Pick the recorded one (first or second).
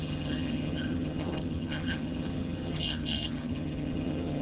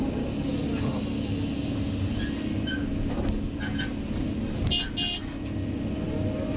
second